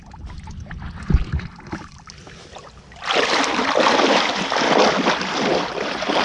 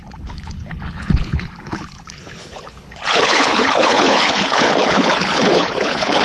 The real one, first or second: first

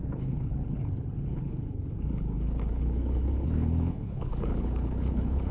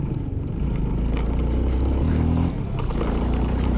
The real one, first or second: second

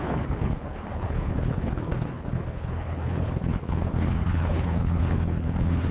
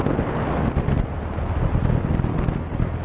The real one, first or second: second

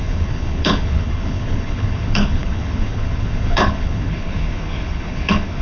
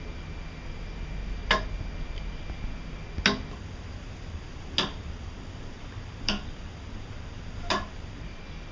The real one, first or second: second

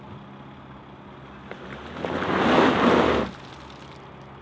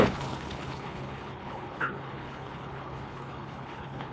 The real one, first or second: first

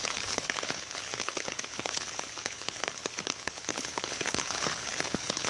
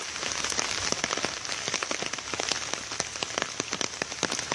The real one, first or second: second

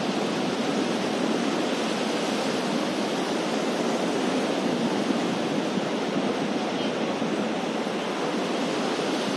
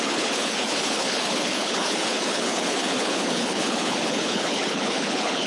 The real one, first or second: first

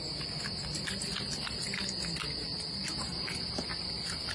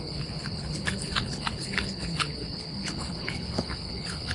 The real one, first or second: first